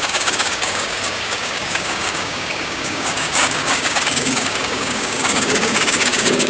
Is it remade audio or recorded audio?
remade